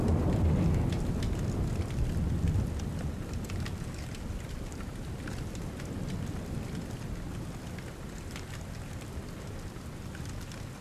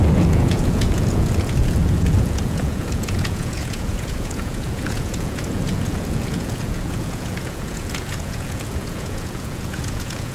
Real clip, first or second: first